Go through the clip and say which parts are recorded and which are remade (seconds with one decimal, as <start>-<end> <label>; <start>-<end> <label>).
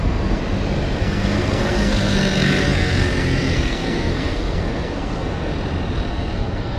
0.0-0.4 remade; 0.4-1.0 recorded; 1.0-5.5 remade; 5.5-6.1 recorded; 6.1-6.8 remade